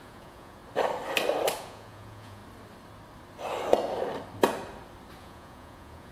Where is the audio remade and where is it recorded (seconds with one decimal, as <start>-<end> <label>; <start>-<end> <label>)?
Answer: 0.0-0.6 remade; 0.6-1.6 recorded; 1.6-2.4 remade; 2.4-5.2 recorded; 5.2-6.1 remade